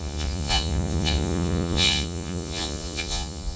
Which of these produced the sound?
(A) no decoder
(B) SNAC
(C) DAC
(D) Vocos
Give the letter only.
D